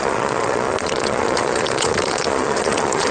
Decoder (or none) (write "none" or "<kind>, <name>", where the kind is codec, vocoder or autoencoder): vocoder, Vocos